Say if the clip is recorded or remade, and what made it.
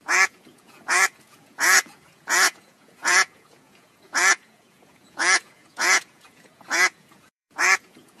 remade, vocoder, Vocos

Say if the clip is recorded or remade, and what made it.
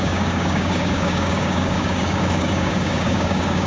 remade, codec, DAC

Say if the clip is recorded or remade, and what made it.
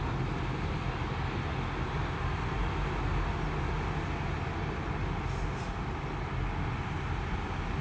recorded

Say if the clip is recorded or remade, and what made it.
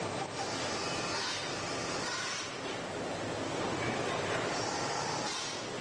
recorded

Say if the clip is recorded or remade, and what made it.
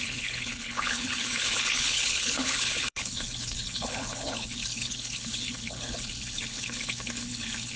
remade, codec, HILCodec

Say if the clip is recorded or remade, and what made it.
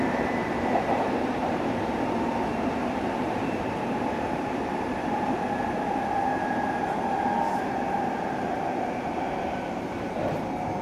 remade, vocoder, BigVGAN v2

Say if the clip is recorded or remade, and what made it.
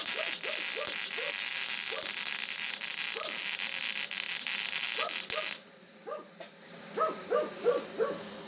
recorded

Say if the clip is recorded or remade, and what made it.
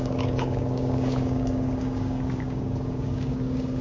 remade, codec, DAC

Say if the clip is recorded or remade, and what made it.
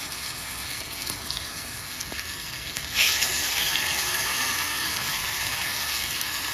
remade, codec, SNAC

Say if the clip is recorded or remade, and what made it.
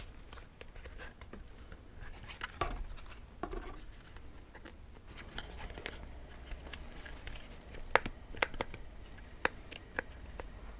recorded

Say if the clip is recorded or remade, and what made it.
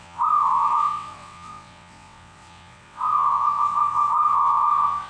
remade, vocoder, WaveNeXt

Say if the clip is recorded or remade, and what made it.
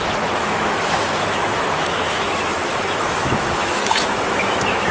remade, autoencoder, DAC-VAE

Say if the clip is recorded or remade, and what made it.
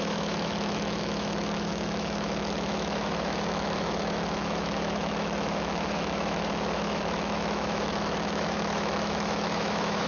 remade, autoencoder, DAC-VAE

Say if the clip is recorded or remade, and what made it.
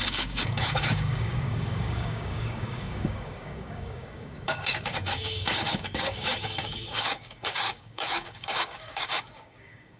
remade, codec, DAC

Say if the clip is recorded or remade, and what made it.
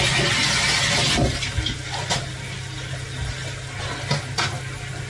recorded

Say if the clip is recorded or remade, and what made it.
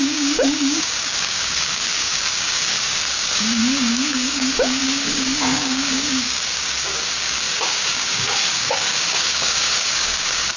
remade, codec, DAC